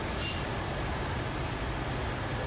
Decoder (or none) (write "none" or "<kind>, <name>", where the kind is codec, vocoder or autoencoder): vocoder, BigVGAN v2